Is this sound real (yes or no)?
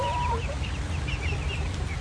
yes